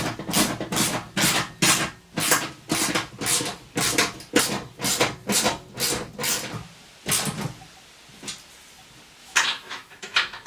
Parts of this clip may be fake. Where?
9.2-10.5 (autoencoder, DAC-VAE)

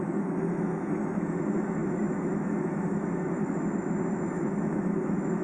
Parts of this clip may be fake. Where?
0.0-5.4 (autoencoder, DAC-VAE)

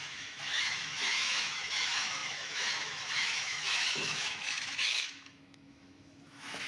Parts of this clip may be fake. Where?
0.0-6.7 (autoencoder, DAC-VAE)